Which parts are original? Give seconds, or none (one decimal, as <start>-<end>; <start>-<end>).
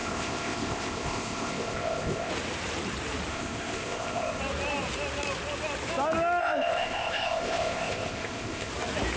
2.3-3.3; 4.4-6.4; 8.7-9.2